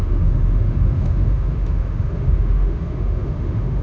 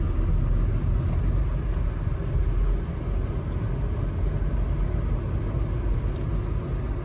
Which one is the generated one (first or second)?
first